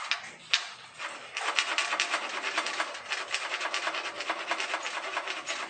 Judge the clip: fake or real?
real